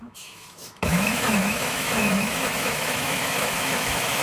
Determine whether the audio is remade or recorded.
remade